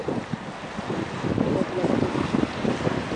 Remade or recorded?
recorded